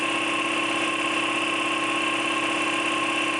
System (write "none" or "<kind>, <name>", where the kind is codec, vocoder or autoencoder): none